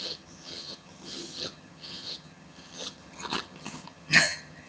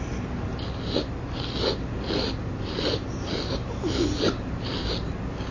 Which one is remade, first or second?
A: first